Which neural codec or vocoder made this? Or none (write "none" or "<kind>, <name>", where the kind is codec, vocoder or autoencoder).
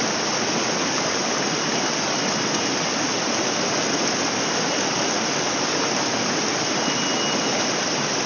none